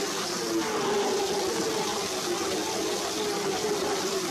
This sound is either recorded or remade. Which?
recorded